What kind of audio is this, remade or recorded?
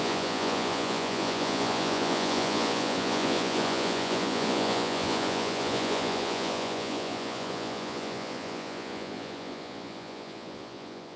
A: remade